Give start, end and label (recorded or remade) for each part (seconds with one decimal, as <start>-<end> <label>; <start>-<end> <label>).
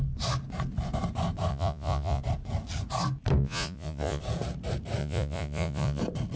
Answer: 0.0-1.5 recorded; 1.5-2.2 remade; 2.2-3.4 recorded; 3.4-4.2 remade; 4.2-5.0 recorded; 5.0-6.0 remade; 6.0-6.4 recorded